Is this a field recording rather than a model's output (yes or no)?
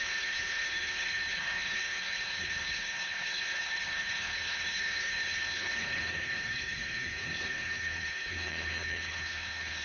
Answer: no